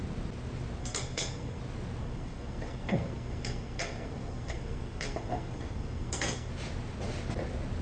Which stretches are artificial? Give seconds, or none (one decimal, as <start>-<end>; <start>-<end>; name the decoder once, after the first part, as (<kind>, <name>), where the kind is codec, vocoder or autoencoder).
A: 0.8-1.6 (codec, SNAC); 2.0-6.5